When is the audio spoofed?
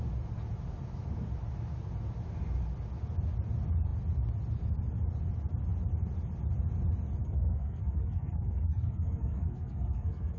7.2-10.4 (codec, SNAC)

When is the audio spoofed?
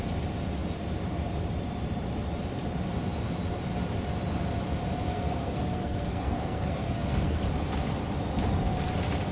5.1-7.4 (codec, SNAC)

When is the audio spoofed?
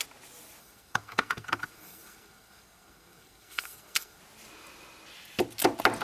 0.6-4.2 (codec, SNAC)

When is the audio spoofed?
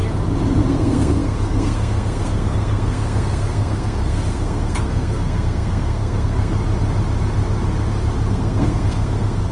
0.7-6.5 (codec, SNAC); 8.3-9.5